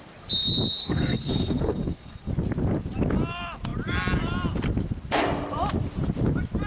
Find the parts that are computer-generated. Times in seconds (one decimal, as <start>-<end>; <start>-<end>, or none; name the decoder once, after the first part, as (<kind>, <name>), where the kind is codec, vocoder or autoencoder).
0.8-2.3 (codec, SNAC)